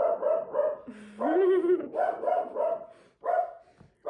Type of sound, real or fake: real